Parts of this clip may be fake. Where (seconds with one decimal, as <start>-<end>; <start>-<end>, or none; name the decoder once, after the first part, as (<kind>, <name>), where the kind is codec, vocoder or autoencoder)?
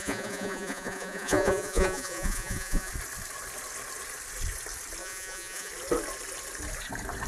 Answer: 0.0-2.9 (vocoder, Vocos); 5.0-5.7